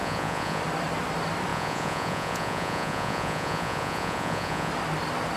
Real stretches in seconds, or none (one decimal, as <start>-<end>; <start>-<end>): 0.6-1.5; 4.7-5.4